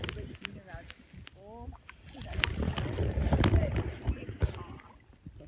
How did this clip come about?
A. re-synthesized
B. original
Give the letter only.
B